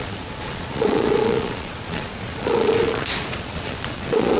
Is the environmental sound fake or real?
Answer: fake